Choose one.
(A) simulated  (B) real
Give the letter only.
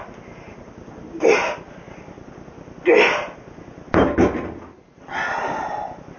B